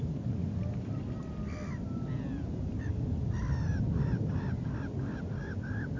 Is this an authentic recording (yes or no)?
yes